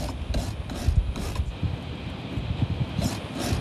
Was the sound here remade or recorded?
recorded